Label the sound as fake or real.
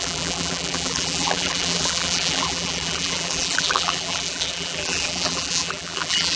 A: fake